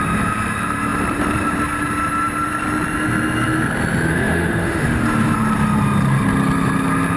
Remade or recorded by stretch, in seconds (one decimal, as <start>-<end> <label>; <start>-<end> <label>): 0.0-4.1 recorded; 4.1-5.0 remade; 5.0-7.2 recorded